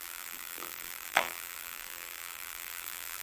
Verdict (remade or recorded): remade